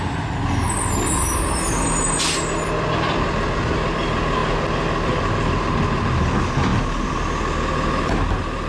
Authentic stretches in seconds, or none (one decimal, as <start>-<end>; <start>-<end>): 0.0-8.7